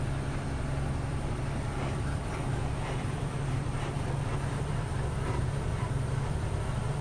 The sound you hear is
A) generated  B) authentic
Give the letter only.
A